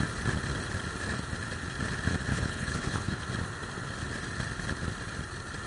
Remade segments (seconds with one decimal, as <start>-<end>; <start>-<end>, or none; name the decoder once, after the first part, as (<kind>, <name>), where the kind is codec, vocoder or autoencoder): 2.3-3.2 (codec, HILCodec)